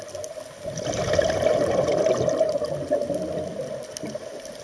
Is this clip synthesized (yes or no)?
no